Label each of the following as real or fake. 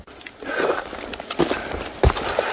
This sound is real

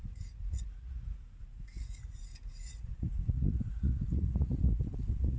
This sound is fake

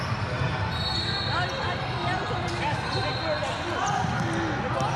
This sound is real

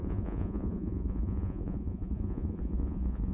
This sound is fake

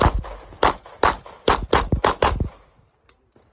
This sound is real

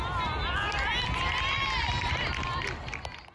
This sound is real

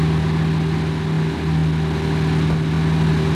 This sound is real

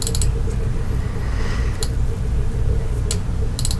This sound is real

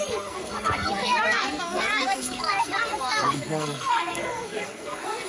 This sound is fake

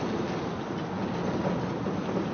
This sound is real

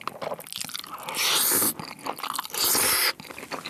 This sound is real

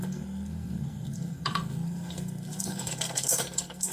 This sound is fake